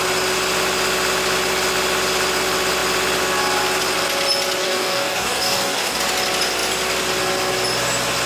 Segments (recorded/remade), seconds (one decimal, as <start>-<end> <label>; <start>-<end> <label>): 0.0-4.6 recorded; 4.6-6.0 remade; 6.0-8.3 recorded